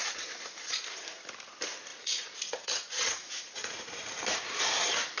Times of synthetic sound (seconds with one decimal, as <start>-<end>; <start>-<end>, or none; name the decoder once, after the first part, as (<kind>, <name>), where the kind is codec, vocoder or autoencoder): 0.0-0.7 (vocoder, Vocos); 1.9-4.2